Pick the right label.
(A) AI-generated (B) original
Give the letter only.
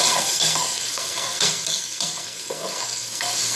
A